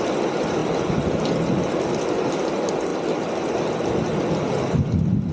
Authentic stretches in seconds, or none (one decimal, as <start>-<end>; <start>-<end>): 0.0-5.3